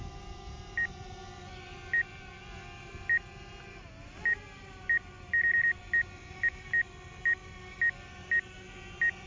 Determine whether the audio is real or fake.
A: real